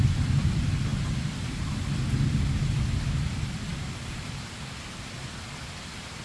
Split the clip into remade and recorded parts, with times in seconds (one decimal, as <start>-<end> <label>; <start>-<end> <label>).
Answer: 0.0-3.7 recorded; 3.7-6.2 remade